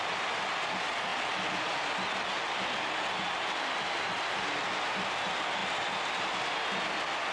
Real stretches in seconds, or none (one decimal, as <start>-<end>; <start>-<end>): 0.0-7.3